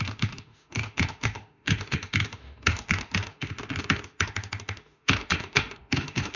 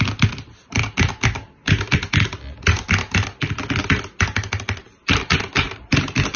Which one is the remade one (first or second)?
first